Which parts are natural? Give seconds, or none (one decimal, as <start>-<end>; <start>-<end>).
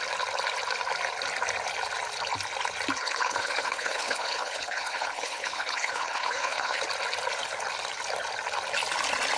0.0-3.0; 6.8-9.4